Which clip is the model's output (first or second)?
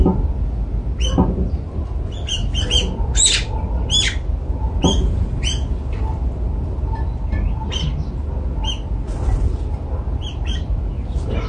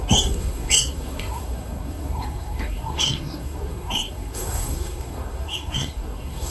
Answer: second